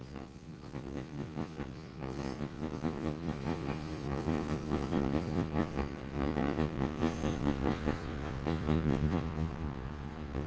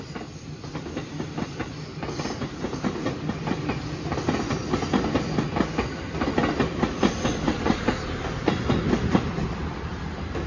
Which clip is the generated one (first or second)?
first